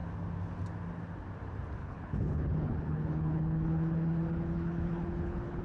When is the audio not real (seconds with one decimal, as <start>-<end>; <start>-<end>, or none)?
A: 1.8-5.6